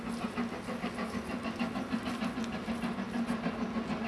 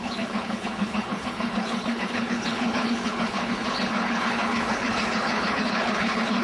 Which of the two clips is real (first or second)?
first